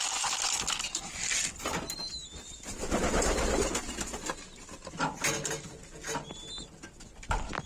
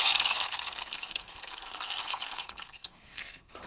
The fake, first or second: second